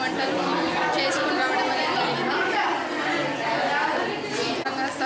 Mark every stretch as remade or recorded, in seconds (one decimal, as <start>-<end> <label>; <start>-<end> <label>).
0.0-5.1 recorded